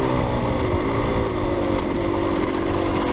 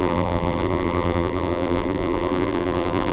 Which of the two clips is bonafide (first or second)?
first